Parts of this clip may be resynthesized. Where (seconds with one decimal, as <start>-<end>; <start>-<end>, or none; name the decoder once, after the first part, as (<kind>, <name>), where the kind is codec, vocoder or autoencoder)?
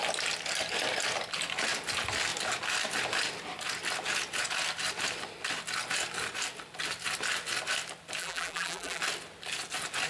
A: 8.2-9.0 (vocoder, BigVGAN v2)